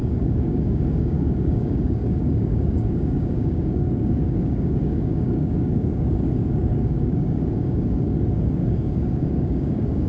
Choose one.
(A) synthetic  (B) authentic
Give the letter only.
A